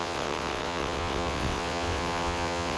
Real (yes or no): no